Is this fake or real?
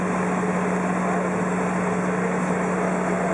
real